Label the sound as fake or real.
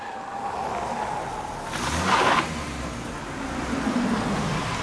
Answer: real